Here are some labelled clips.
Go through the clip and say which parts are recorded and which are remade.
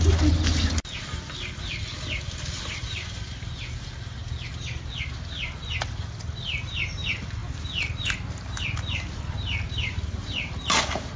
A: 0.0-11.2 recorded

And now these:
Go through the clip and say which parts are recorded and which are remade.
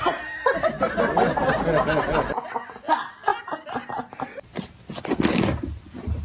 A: 0.0-6.2 recorded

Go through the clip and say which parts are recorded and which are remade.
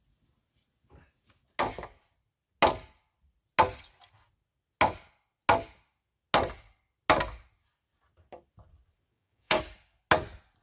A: 0.0-9.1 recorded; 9.1-9.6 remade; 9.6-10.6 recorded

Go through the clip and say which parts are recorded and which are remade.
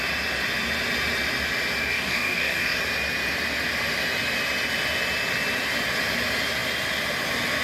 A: 0.0-1.8 recorded; 1.8-2.8 remade; 2.8-7.6 recorded